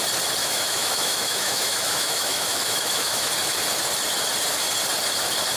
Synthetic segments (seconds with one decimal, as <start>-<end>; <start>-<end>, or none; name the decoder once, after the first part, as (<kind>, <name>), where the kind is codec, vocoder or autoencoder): 0.4-3.3 (autoencoder, DAC-VAE)